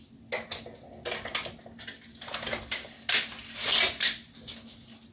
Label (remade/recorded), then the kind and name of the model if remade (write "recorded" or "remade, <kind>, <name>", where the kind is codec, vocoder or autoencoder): recorded